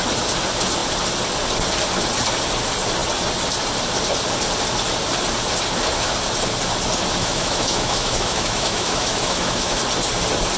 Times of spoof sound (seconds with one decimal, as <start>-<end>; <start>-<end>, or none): 7.2-9.8